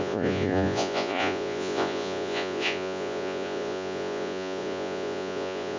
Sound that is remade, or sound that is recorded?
remade